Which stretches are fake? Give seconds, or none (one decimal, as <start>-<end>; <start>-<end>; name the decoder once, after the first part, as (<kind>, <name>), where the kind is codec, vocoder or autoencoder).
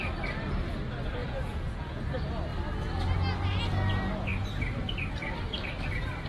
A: 1.2-1.9 (vocoder, Vocos)